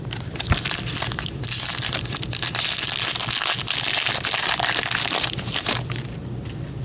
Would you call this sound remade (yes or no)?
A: no